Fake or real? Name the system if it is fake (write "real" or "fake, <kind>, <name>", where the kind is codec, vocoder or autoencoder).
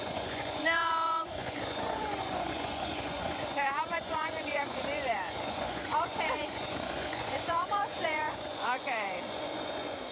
fake, vocoder, Vocos